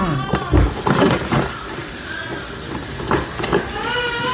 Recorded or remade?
recorded